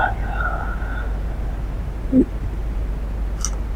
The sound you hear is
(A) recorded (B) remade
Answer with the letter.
A